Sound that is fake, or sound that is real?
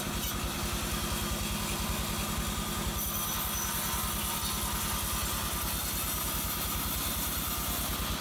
real